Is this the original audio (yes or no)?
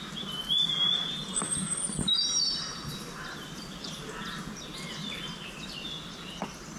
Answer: yes